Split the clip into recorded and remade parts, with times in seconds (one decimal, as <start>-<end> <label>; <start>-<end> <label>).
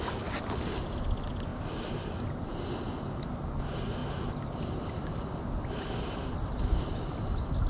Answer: 0.0-7.7 recorded